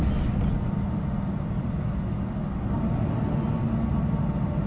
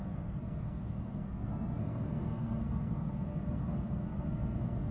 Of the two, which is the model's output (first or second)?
second